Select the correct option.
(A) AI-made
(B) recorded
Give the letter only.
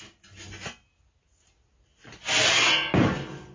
B